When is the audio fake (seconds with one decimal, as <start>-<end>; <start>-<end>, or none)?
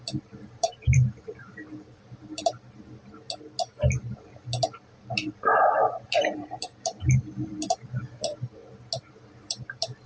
0.0-3.0; 4.0-8.6; 9.1-10.1